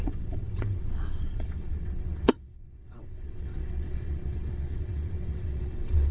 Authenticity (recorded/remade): remade